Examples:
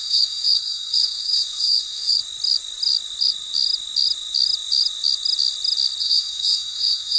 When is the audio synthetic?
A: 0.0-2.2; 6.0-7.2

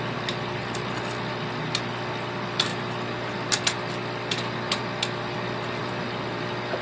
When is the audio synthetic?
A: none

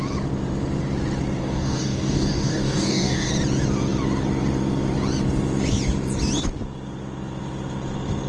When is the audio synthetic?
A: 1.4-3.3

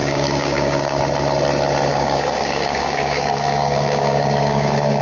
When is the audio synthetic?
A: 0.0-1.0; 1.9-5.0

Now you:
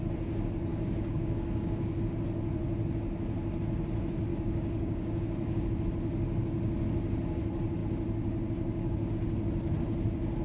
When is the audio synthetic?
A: 0.7-2.0; 4.3-5.7

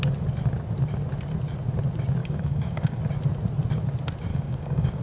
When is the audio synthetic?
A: 2.2-3.0; 4.3-5.0